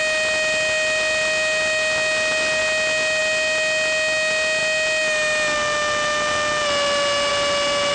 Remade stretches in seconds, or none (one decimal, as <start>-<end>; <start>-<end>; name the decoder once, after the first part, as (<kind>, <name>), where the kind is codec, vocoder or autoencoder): none